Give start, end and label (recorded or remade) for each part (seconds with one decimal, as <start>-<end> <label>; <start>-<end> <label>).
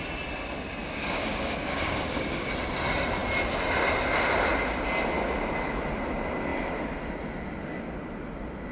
0.0-0.8 recorded; 0.8-2.5 remade; 2.5-8.7 recorded